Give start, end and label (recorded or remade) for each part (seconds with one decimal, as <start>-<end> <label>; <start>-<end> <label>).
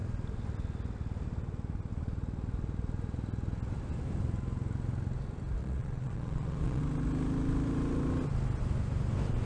0.0-5.6 recorded; 5.6-6.8 remade; 6.8-9.5 recorded